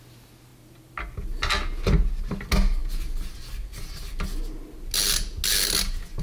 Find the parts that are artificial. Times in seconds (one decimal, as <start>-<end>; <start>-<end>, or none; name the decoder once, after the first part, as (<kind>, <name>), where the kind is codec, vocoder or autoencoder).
none